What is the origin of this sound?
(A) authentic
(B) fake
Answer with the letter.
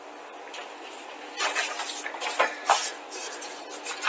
A